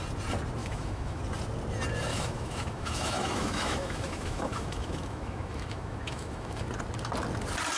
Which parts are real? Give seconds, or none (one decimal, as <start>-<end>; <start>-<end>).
0.0-0.6; 1.2-2.1; 6.7-7.8

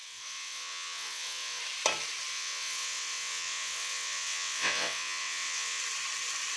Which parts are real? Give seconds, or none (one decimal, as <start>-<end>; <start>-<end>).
1.6-2.3; 5.8-6.6

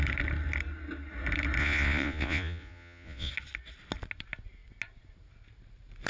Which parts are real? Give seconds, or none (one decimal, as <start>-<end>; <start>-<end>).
0.0-1.6; 3.3-6.1

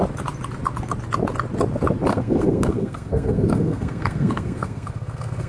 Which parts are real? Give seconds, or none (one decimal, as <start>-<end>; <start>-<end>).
0.0-2.1

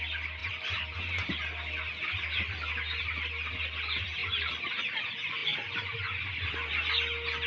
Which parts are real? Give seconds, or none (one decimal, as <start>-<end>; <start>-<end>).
0.0-7.5

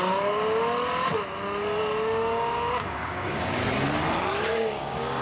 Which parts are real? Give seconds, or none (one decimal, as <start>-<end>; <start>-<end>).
0.0-2.2; 3.6-4.5

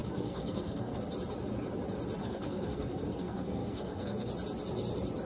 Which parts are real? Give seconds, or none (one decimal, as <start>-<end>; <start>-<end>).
1.0-2.2; 4.3-5.3